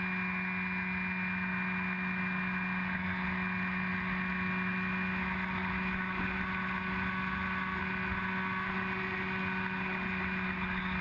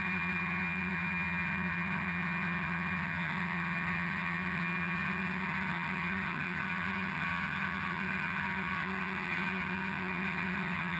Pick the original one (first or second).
first